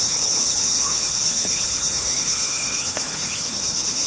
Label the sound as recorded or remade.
remade